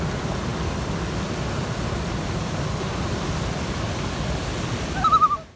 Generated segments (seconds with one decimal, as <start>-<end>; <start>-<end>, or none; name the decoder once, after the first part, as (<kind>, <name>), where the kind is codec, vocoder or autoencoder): none